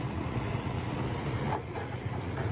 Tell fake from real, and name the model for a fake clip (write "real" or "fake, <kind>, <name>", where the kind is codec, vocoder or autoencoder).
fake, vocoder, Vocos